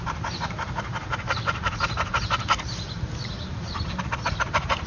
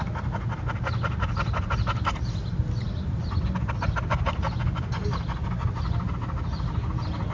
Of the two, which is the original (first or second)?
second